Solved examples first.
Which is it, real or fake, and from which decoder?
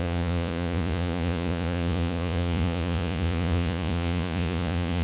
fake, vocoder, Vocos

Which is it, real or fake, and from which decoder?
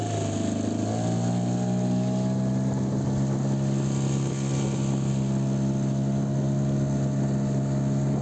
real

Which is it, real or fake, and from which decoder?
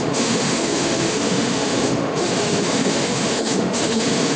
fake, autoencoder, DAC-VAE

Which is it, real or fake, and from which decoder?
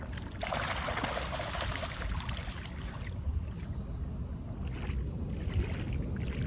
real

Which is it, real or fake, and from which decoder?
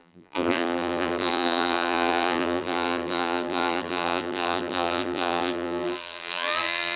fake, vocoder, BigVGAN v2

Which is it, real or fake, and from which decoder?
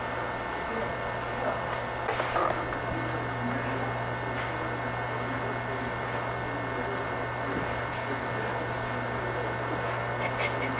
real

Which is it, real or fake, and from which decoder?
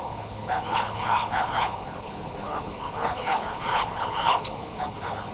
fake, codec, HILCodec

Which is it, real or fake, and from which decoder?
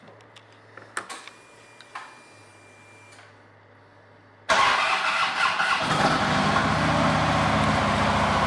real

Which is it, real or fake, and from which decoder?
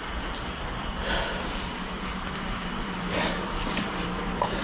real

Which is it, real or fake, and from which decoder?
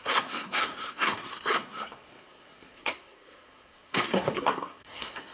fake, codec, SNAC